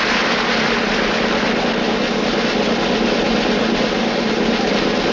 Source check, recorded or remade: recorded